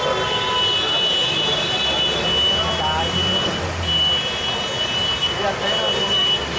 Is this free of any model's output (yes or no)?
yes